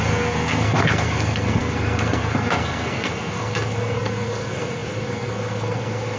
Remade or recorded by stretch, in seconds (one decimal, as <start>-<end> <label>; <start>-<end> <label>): 0.0-6.2 remade